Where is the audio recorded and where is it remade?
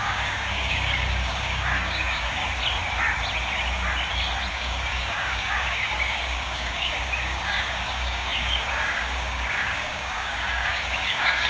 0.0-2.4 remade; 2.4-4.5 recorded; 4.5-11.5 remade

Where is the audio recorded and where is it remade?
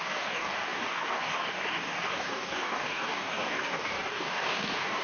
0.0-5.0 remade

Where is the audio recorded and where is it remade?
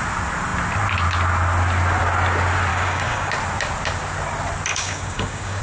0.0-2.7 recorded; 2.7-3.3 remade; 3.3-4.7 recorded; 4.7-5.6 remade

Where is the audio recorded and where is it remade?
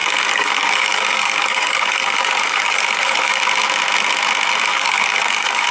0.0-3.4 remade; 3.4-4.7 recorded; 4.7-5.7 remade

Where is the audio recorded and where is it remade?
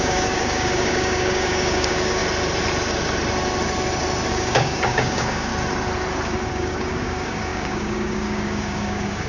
0.0-2.2 remade; 2.2-4.3 recorded; 4.3-5.5 remade; 5.5-6.5 recorded; 6.5-9.3 remade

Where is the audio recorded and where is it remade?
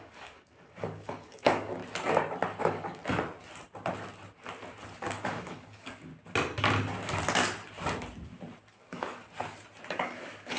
0.0-1.8 remade; 1.8-2.6 recorded; 2.6-3.0 remade; 3.0-5.0 recorded; 5.0-6.1 remade; 6.1-8.7 recorded; 8.7-9.2 remade; 9.2-9.9 recorded; 9.9-10.6 remade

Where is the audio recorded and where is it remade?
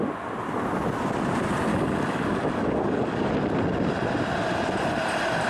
0.0-1.7 recorded; 1.7-3.3 remade; 3.3-5.5 recorded